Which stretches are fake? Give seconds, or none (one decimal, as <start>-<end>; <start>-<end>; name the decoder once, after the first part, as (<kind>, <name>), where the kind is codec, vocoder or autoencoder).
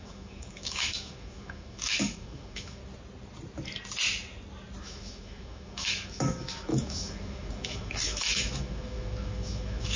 0.0-2.8 (autoencoder, DAC-VAE); 4.8-10.0